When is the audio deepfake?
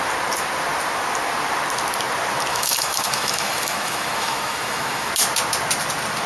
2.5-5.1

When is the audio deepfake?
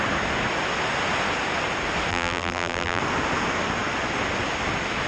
2.1-3.0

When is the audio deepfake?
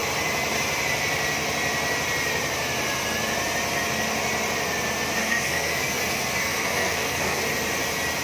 5.2-6.0; 6.4-7.4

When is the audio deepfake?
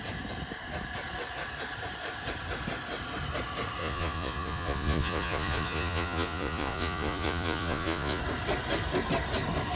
3.8-8.2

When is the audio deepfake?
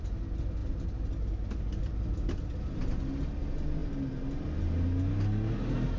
none